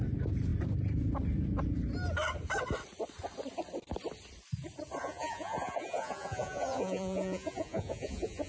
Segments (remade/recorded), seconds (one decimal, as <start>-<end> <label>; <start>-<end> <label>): 0.0-5.0 recorded; 5.0-8.5 remade